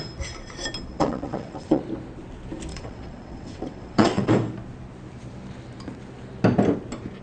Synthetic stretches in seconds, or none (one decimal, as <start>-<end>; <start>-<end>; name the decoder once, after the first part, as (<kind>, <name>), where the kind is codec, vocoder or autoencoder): 0.9-1.8 (vocoder, WaveNeXt); 2.7-4.3

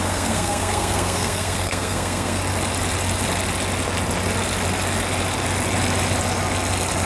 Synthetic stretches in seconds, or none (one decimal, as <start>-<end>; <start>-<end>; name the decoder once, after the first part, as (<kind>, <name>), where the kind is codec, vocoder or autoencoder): 0.0-2.4 (codec, SNAC)

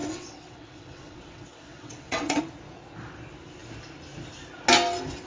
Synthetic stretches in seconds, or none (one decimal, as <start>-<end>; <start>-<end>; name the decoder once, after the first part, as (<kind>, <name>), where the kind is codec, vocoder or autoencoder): 0.0-2.4 (vocoder, WaveNeXt)

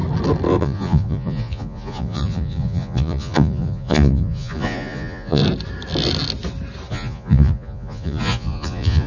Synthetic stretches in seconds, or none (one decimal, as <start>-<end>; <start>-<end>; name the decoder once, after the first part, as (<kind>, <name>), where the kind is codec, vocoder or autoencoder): 0.6-5.4 (vocoder, Vocos); 6.9-9.1

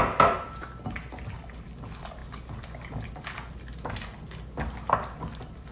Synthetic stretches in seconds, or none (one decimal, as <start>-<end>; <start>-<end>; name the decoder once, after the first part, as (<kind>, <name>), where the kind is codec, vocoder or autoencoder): none

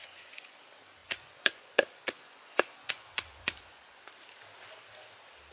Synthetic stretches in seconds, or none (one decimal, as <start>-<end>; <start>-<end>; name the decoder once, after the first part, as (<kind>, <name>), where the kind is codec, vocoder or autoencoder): 0.0-0.6 (vocoder, Vocos); 1.0-4.0

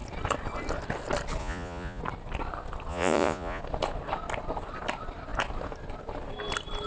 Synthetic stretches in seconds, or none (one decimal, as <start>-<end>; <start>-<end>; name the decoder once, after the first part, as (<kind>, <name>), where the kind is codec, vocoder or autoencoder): 1.4-2.0 (vocoder, Vocos); 2.9-3.6